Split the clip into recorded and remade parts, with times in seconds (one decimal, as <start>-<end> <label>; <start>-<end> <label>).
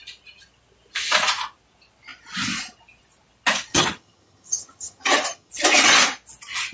0.0-3.7 recorded; 3.7-5.5 remade; 5.5-6.7 recorded